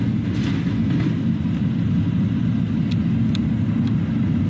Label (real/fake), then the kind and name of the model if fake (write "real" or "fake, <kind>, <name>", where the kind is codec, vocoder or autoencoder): real